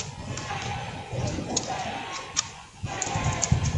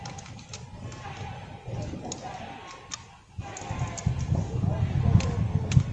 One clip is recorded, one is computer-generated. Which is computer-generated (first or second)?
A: first